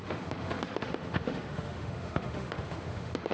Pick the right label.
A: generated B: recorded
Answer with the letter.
A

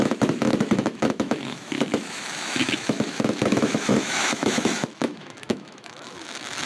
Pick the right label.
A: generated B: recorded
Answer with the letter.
A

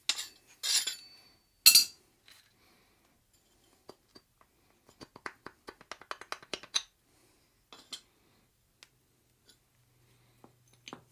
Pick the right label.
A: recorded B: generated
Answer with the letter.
A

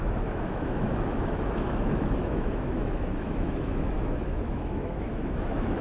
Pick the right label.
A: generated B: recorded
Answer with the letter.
A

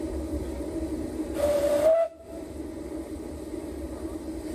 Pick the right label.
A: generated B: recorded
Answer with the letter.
B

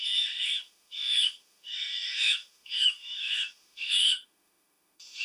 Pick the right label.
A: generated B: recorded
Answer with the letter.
A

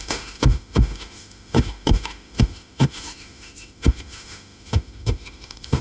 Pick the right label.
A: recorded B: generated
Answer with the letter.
B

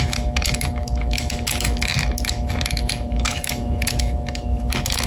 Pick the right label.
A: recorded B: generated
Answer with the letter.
B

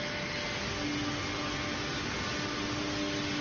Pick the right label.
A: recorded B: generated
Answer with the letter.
A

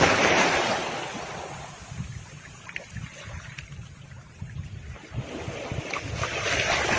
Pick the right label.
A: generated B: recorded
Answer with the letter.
B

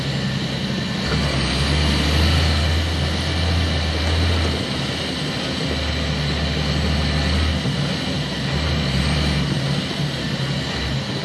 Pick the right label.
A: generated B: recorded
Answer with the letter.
B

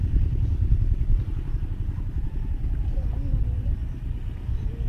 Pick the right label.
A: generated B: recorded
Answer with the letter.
B